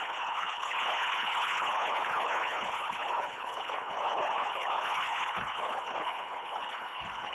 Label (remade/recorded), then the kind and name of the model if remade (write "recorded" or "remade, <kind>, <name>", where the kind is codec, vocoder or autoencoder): remade, codec, HILCodec